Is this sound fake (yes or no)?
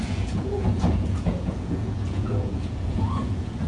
yes